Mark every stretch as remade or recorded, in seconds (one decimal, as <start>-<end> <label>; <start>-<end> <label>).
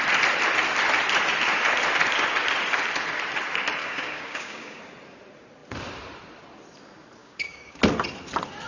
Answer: 0.0-3.8 recorded; 3.8-4.8 remade; 4.8-7.2 recorded; 7.2-7.8 remade; 7.8-8.7 recorded